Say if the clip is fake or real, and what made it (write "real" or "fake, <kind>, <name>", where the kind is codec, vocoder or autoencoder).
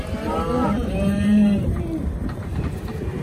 fake, vocoder, BigVGAN v2